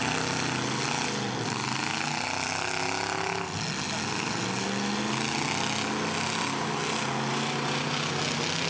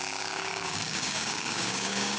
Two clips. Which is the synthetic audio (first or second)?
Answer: second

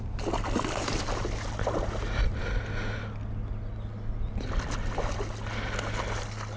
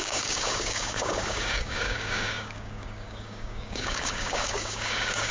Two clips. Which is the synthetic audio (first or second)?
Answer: second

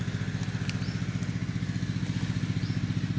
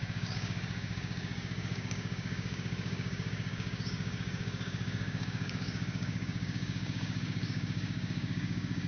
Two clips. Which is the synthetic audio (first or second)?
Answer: second